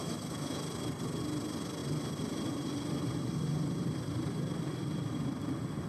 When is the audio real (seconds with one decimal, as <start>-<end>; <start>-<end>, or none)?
0.6-5.9